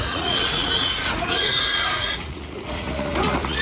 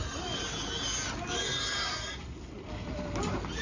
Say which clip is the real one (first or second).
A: second